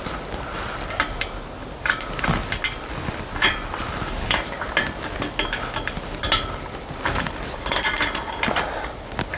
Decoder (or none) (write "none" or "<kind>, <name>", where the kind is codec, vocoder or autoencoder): none